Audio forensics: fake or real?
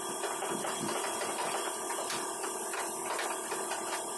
real